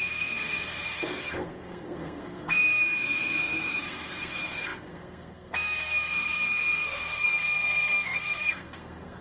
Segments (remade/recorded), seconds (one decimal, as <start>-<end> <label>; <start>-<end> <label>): 0.0-9.2 remade